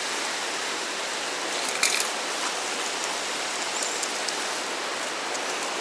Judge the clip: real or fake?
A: real